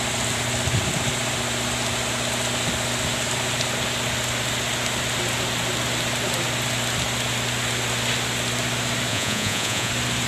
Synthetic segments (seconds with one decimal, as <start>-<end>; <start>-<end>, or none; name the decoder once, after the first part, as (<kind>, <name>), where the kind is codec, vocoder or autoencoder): 9.1-9.9 (vocoder, Vocos)